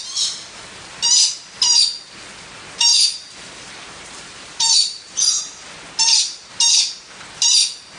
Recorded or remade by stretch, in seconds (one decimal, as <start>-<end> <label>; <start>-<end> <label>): 0.0-2.9 recorded; 2.9-5.4 remade; 5.4-8.0 recorded